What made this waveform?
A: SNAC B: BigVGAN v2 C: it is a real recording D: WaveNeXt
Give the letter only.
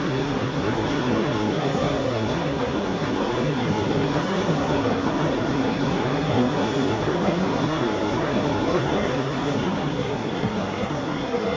A